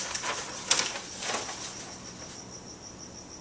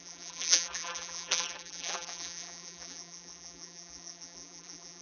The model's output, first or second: second